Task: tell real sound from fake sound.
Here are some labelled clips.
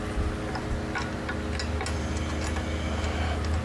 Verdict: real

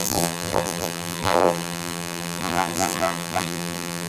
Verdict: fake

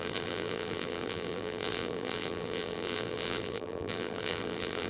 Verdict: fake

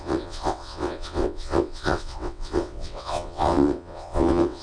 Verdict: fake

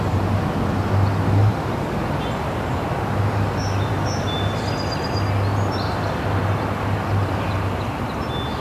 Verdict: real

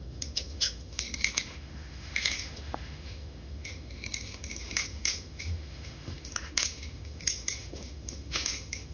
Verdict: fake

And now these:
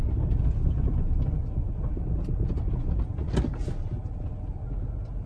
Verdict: real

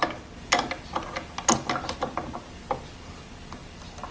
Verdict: real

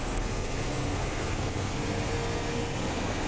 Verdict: fake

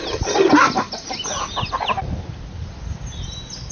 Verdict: real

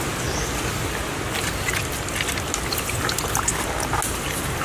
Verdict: real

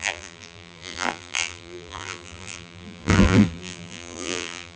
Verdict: fake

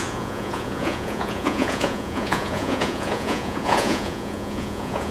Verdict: fake